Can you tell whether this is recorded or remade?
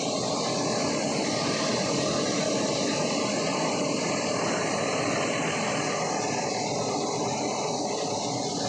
recorded